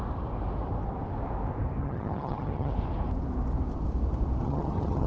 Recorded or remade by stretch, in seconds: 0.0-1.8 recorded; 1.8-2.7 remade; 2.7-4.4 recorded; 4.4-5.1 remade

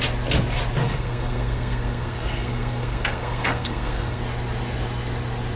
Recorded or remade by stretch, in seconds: 0.0-0.8 recorded; 0.8-4.2 remade; 4.2-5.6 recorded